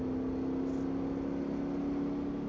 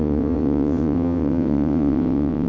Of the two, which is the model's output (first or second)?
second